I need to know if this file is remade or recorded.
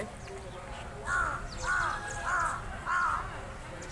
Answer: recorded